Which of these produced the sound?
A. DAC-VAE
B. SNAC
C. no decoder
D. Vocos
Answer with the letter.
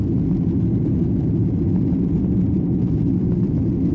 C